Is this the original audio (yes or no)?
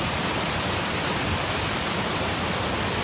yes